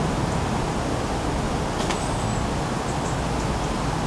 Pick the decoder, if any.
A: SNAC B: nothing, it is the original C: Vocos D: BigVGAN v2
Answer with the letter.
B